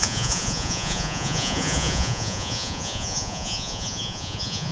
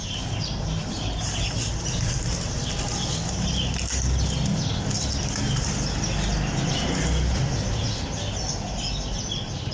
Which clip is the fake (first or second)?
first